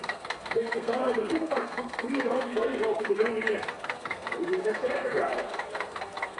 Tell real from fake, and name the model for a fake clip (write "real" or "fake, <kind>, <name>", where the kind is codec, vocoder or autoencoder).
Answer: fake, codec, SNAC